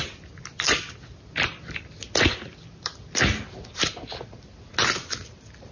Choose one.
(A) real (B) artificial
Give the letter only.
A